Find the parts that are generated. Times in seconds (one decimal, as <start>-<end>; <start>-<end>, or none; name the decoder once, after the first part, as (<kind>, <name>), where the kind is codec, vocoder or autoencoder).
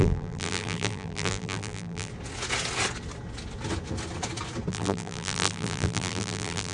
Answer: 0.0-2.1 (vocoder, BigVGAN v2); 4.7-6.7